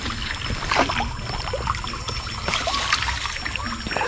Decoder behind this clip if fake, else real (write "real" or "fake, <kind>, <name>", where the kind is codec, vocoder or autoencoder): real